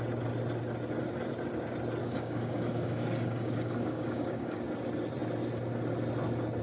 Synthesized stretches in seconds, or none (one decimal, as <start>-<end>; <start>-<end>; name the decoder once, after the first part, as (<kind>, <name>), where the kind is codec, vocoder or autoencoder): 2.0-4.6 (codec, DAC)